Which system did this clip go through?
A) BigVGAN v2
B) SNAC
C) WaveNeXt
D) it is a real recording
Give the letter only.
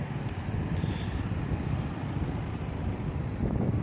D